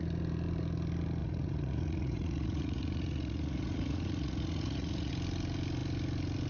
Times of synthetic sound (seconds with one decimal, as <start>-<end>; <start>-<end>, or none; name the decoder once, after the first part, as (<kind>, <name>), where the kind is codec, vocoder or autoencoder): 1.2-5.1 (vocoder, Vocos)